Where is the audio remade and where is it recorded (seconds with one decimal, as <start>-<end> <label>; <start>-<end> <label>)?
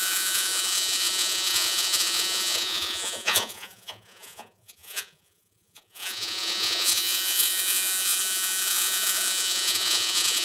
0.0-10.4 remade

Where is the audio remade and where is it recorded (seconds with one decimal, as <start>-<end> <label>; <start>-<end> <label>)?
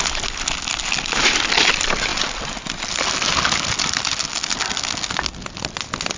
0.0-6.2 recorded